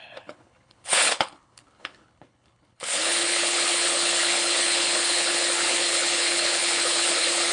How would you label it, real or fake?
fake